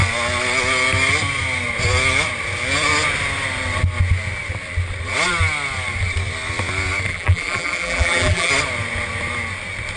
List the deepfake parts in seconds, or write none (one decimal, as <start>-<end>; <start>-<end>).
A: 7.1-8.5